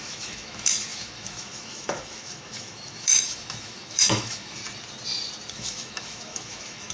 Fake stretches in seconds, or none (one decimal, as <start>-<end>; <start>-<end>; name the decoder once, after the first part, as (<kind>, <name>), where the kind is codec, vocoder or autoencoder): 0.0-4.6 (autoencoder, DAC-VAE); 5.5-6.9